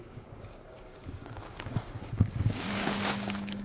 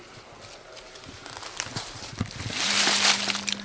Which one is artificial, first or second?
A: first